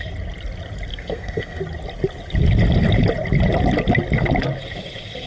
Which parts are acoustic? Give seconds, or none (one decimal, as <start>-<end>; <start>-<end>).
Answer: 0.0-0.9; 1.6-5.3